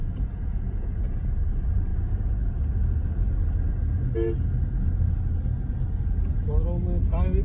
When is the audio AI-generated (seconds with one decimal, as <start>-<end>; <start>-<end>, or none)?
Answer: 0.0-1.5